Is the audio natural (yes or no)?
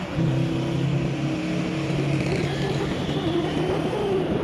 yes